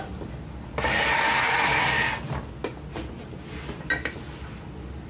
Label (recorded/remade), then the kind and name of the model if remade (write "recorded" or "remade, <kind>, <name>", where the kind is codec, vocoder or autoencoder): recorded